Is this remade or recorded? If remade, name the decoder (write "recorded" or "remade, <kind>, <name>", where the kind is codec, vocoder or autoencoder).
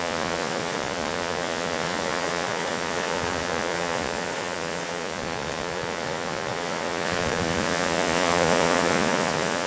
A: remade, vocoder, Vocos